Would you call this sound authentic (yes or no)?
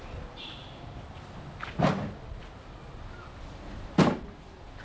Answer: yes